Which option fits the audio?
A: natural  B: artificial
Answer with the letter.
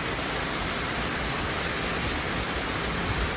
A